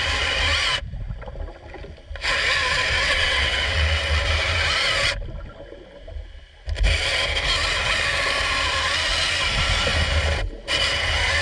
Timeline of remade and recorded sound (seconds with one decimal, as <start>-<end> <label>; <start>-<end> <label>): 0.0-3.0 recorded; 3.0-4.2 remade; 4.2-11.4 recorded